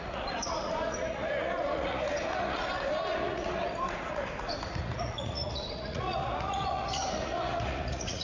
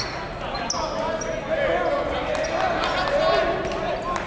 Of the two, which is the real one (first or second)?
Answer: second